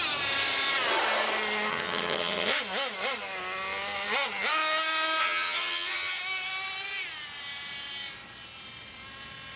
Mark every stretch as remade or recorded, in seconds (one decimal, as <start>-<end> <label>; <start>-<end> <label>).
0.0-1.7 recorded; 1.7-2.6 remade; 2.6-5.2 recorded; 5.2-6.2 remade; 6.2-9.6 recorded